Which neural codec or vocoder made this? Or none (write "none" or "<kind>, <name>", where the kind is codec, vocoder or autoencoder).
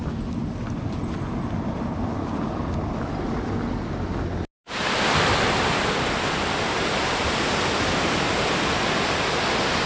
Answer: none